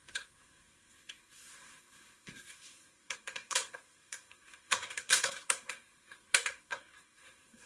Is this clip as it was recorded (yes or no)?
no